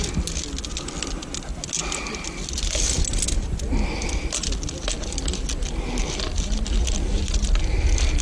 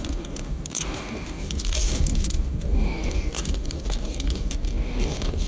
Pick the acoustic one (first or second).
first